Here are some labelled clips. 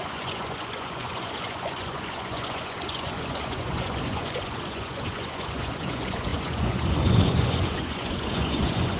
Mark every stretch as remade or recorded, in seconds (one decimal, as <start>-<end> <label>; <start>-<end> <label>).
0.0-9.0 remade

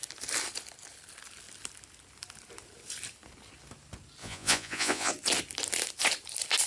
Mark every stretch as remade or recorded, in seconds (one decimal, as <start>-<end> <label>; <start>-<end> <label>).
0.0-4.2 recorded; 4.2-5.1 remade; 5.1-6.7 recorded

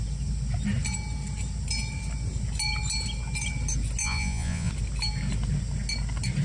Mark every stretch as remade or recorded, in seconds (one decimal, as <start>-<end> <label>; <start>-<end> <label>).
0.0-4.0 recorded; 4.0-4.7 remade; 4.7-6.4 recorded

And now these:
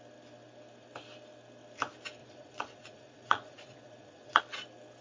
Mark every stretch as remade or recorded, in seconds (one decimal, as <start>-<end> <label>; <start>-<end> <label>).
0.0-2.2 recorded; 2.2-4.4 remade; 4.4-5.0 recorded